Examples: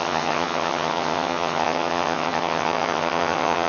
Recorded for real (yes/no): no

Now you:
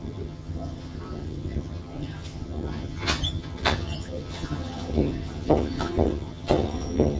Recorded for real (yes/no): no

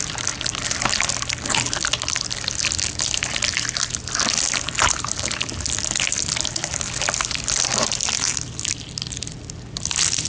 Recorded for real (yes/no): yes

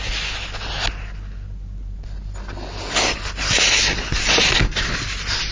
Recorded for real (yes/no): yes